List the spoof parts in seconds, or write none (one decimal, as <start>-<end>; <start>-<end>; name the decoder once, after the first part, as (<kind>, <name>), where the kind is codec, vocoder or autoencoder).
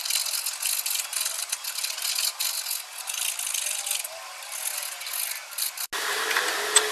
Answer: none